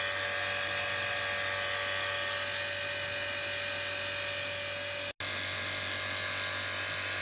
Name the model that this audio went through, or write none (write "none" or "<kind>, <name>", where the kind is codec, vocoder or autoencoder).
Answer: none